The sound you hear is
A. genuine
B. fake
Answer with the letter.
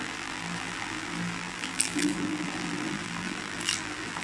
B